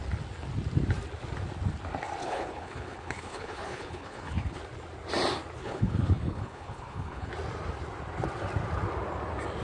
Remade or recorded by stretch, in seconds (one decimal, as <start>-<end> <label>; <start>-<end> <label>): 0.0-2.2 recorded; 2.2-4.6 remade; 4.6-5.6 recorded; 5.6-7.3 remade; 7.3-9.6 recorded